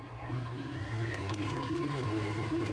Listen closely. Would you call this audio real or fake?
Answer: fake